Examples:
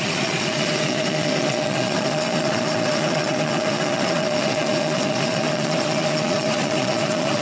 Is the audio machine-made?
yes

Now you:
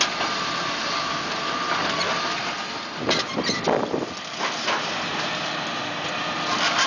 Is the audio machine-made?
no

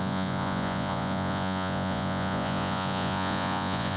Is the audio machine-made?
yes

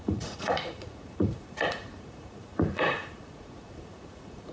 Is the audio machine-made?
yes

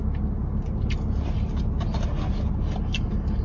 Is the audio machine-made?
no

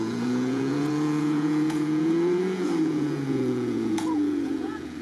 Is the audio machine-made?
yes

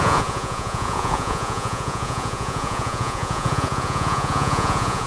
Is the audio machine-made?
yes